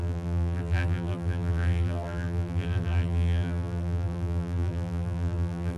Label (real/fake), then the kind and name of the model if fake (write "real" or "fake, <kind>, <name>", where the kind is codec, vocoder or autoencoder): fake, vocoder, BigVGAN v2